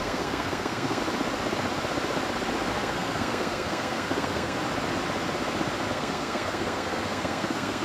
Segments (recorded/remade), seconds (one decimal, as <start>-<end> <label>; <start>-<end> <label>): 0.0-1.0 remade; 1.0-2.7 recorded; 2.7-4.6 remade; 4.6-5.9 recorded; 5.9-7.8 remade